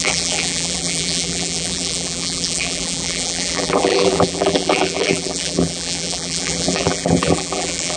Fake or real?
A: fake